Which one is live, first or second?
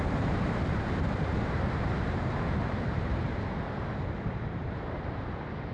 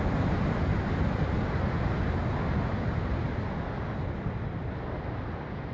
second